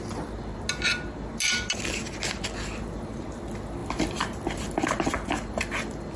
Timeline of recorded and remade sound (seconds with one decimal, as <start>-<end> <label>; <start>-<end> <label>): 0.0-6.2 recorded